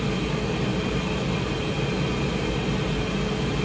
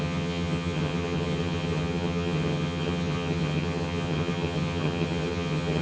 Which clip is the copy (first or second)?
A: second